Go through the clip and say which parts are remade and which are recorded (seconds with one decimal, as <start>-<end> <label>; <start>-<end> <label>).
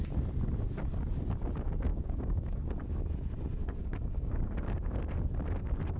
0.0-1.9 recorded; 1.9-3.1 remade; 3.1-3.6 recorded; 3.6-5.1 remade; 5.1-6.0 recorded